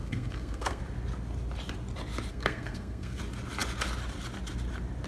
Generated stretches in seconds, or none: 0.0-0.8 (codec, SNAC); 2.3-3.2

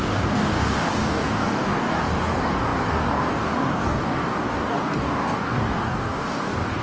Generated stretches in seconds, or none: 0.0-6.8 (codec, DAC)

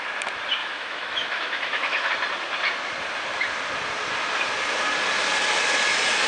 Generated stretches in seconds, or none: 0.6-2.1 (autoencoder, DAC-VAE)